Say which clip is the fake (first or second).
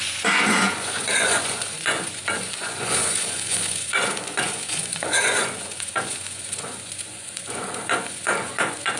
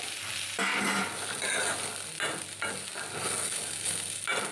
first